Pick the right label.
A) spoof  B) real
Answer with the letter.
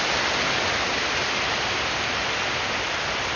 B